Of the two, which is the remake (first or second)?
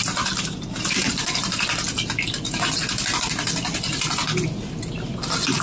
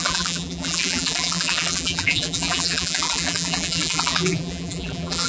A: second